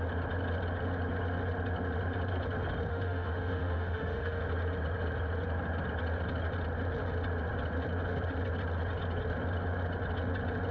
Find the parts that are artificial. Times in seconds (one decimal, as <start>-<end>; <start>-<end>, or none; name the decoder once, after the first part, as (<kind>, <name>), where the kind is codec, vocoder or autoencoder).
2.9-4.4 (autoencoder, DAC-VAE)